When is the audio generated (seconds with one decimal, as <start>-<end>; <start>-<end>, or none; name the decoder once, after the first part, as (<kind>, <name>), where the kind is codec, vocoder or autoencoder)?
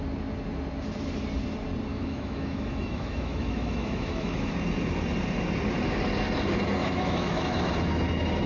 1.9-4.5 (autoencoder, DAC-VAE); 6.8-7.7